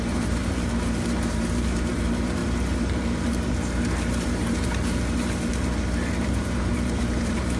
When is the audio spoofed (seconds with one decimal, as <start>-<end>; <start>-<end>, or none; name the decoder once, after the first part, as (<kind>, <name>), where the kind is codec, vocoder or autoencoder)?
0.0-7.6 (vocoder, BigVGAN v2)